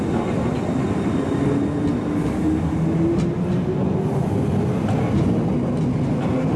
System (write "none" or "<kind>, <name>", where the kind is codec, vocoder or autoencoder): none